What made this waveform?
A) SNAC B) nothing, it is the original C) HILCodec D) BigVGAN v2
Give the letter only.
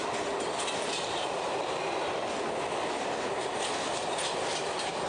B